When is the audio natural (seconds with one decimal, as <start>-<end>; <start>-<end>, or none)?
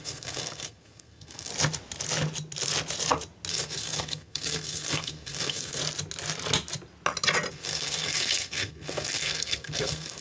1.5-3.5; 5.8-7.5